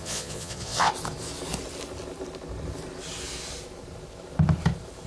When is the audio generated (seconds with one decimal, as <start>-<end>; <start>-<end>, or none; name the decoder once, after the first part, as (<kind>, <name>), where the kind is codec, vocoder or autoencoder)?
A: 0.0-0.9 (vocoder, Vocos)

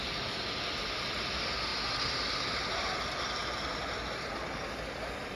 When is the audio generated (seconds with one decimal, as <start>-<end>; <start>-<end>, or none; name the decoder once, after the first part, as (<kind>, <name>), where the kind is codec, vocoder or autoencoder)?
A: none